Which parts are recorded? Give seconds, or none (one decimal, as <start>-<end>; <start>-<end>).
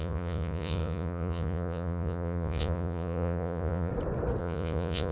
3.9-4.4